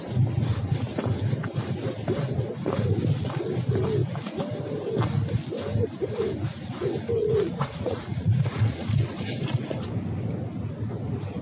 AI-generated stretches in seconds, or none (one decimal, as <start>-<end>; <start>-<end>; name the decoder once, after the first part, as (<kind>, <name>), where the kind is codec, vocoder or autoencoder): 7.2-9.2 (vocoder, Vocos)